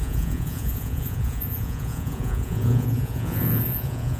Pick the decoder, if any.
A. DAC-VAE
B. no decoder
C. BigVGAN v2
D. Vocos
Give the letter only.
D